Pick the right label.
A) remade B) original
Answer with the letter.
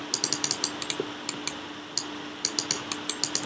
B